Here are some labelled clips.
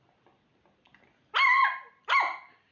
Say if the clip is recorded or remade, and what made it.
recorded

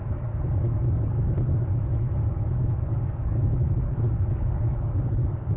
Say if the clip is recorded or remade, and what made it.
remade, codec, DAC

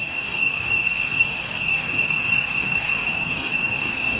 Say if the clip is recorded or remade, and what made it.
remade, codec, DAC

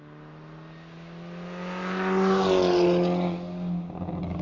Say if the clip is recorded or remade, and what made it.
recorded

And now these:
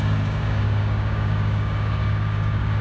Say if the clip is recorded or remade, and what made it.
remade, codec, DAC